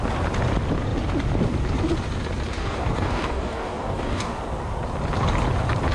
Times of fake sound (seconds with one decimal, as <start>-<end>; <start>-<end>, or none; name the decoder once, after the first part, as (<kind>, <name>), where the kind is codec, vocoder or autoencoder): 2.5-4.4 (codec, DAC)